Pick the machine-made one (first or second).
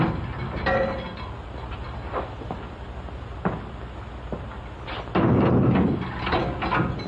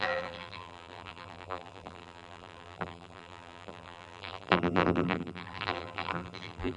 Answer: second